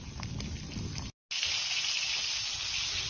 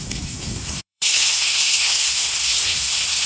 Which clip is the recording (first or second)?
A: first